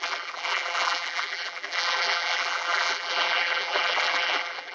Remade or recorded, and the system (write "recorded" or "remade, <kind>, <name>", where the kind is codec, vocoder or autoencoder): remade, vocoder, BigVGAN v2